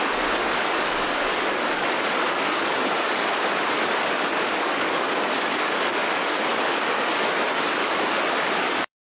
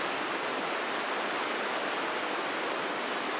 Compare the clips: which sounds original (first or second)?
second